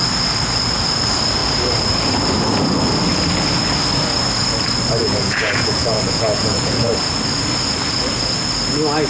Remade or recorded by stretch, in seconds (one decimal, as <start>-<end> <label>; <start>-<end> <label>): 0.0-5.0 recorded; 5.0-6.9 remade; 6.9-9.1 recorded

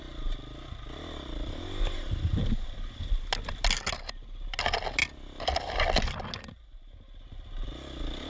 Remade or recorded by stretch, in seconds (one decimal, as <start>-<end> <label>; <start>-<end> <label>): 0.0-8.3 recorded

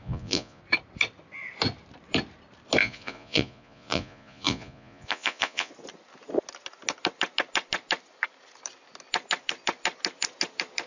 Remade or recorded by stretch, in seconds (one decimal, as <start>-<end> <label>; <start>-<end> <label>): 0.0-0.6 remade; 0.6-2.8 recorded; 2.8-5.7 remade; 5.7-10.9 recorded

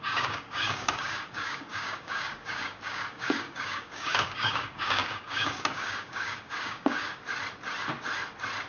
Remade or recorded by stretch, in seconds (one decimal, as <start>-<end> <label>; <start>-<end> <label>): 0.0-7.2 remade; 7.2-8.7 recorded